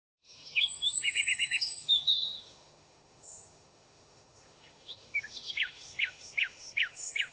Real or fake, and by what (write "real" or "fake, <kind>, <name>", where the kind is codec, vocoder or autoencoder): fake, autoencoder, DAC-VAE